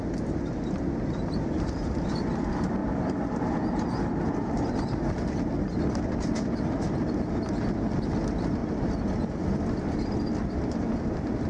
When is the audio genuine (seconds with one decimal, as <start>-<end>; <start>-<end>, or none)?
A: 0.0-11.5